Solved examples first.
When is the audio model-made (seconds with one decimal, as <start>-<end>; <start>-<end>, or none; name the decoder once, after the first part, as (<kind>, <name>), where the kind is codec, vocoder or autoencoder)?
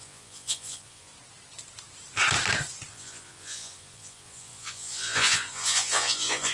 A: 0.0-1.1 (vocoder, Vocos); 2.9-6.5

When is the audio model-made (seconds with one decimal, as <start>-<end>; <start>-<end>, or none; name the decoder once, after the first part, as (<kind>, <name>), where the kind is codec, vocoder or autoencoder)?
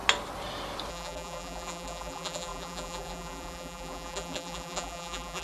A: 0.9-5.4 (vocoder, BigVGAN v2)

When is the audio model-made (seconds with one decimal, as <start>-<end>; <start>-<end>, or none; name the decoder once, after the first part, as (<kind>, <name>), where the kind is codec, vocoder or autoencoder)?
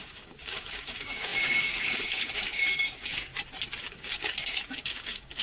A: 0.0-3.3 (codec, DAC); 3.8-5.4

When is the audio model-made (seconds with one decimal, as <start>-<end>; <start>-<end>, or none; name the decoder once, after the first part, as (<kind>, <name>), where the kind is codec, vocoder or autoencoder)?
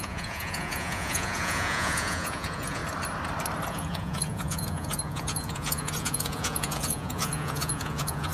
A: 0.0-2.8 (vocoder, Vocos); 3.7-8.3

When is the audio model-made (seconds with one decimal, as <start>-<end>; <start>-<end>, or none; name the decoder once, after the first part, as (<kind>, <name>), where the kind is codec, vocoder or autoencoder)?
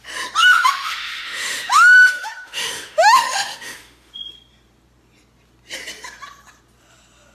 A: 0.4-4.1 (autoencoder, DAC-VAE)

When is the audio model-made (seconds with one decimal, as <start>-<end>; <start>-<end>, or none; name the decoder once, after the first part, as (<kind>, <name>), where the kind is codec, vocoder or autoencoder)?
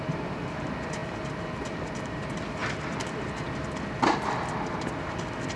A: none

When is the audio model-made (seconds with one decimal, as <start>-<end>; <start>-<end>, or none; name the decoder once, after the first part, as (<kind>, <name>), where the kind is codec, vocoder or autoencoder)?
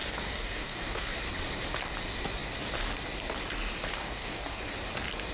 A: 0.0-1.3 (codec, DAC); 4.0-4.6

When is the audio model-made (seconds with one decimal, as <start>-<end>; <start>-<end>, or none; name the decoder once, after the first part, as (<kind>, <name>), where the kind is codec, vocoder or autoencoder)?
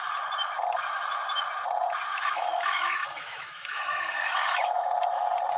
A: 2.1-4.9 (autoencoder, DAC-VAE)